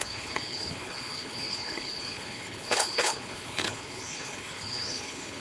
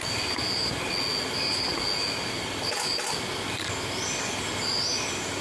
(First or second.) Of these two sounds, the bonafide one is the second